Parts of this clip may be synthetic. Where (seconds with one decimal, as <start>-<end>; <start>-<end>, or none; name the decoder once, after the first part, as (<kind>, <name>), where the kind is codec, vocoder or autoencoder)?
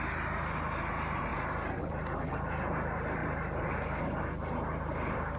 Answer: 1.3-1.8 (vocoder, BigVGAN v2)